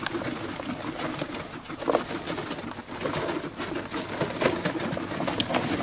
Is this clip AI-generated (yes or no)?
no